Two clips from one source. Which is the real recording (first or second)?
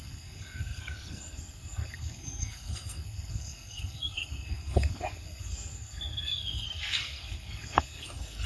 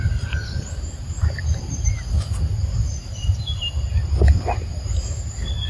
second